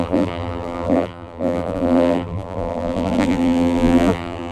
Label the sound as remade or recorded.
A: remade